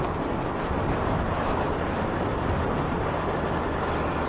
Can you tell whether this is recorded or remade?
recorded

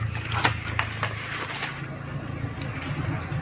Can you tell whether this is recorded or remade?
recorded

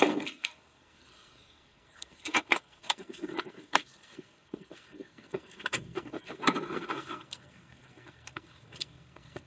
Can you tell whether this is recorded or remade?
remade